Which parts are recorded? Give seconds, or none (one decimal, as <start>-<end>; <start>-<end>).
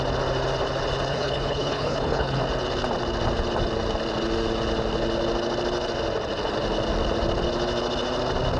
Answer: 0.0-1.1; 2.4-8.6